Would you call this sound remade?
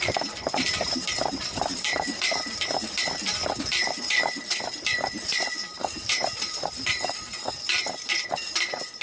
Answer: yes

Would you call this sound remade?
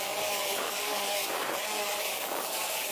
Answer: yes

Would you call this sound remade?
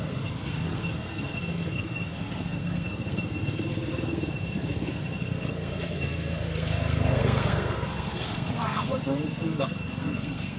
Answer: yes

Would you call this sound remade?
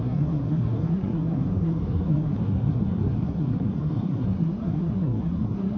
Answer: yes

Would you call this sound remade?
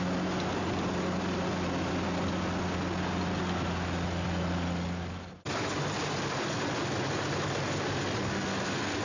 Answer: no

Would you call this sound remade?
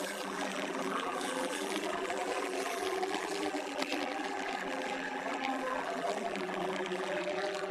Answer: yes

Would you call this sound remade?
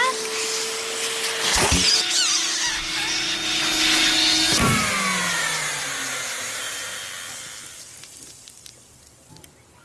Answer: no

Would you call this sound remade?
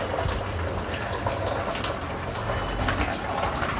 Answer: no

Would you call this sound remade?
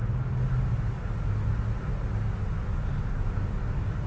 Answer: no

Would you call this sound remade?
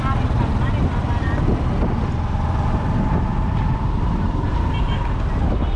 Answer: no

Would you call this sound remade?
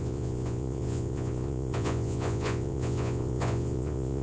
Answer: yes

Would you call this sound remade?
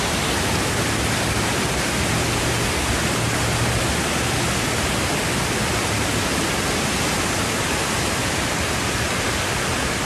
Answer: no